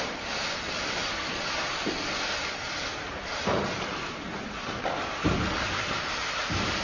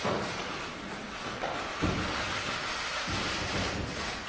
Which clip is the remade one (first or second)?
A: first